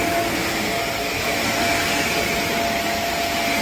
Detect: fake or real real